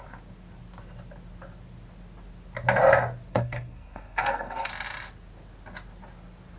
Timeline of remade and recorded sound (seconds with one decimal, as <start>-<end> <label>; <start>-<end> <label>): 0.0-3.3 recorded; 3.3-4.7 remade; 4.7-6.6 recorded